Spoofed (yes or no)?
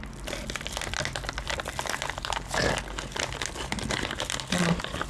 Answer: no